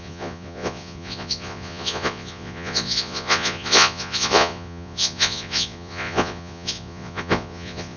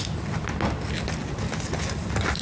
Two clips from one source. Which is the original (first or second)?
second